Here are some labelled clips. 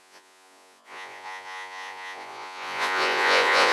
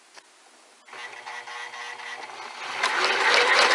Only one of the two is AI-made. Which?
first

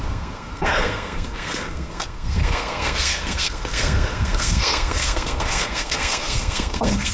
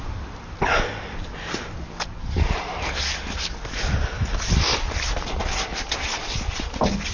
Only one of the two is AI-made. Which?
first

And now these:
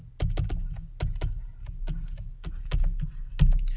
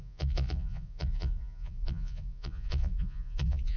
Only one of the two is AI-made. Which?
second